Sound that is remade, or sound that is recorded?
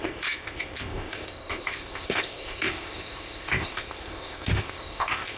remade